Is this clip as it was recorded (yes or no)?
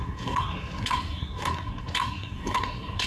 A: no